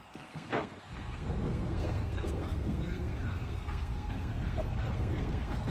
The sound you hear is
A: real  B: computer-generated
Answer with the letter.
B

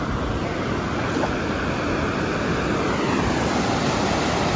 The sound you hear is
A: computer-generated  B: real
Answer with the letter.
B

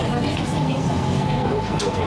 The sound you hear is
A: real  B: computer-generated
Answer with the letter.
B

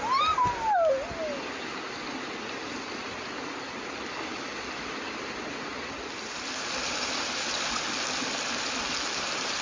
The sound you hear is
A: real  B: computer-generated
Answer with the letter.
A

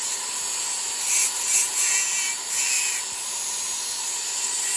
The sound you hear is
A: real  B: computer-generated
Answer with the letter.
A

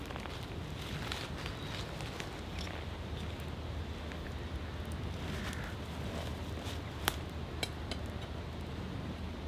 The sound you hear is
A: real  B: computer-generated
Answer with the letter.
A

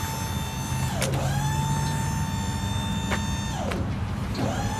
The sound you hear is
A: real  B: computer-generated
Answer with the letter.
A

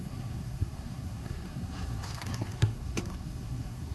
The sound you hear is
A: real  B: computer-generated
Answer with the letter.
B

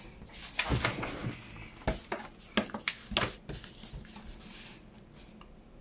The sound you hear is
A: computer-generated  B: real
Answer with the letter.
B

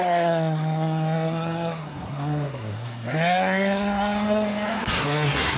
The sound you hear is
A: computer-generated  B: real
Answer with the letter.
A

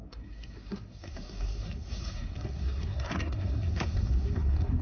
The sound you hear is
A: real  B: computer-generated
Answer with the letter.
B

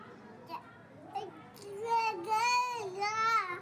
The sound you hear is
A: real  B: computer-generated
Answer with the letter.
A